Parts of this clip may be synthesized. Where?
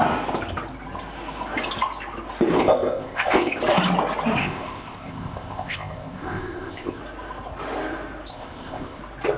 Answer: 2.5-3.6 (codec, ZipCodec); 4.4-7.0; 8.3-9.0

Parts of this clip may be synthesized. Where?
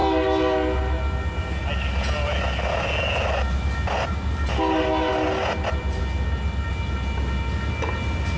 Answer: none